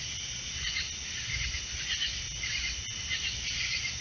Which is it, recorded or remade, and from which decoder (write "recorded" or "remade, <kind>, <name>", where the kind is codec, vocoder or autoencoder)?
recorded